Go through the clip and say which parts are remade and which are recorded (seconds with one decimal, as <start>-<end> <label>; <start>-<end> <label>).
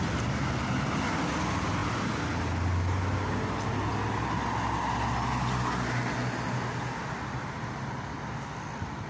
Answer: 0.0-9.1 recorded